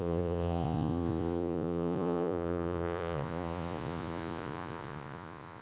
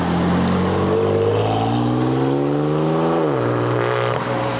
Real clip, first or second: second